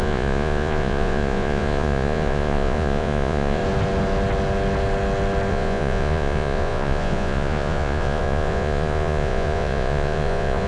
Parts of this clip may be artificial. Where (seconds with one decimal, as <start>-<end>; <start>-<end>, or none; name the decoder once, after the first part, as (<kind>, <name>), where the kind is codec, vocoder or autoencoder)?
0.0-3.6 (vocoder, Vocos); 5.5-10.7